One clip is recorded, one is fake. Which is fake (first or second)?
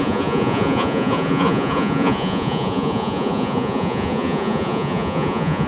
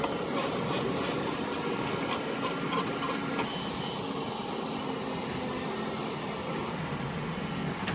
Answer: first